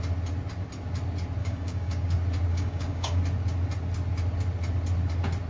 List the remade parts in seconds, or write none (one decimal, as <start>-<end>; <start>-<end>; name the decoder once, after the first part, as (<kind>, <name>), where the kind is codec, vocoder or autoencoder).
1.4-2.1 (codec, DAC); 2.5-3.2